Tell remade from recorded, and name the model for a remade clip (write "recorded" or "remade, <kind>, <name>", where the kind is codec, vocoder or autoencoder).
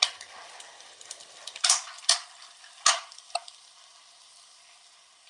recorded